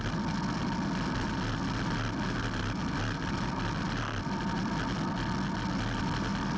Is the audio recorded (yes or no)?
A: yes